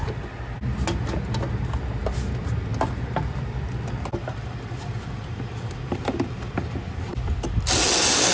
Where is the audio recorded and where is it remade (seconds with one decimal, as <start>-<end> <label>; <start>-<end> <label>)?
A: 0.0-2.7 recorded; 2.7-6.5 remade; 6.5-8.3 recorded